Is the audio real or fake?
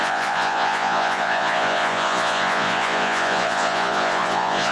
fake